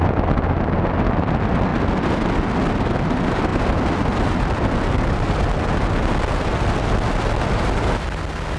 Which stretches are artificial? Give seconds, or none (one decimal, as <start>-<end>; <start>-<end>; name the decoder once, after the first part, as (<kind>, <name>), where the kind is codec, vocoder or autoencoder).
none